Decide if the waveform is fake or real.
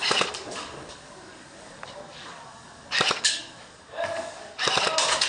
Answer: fake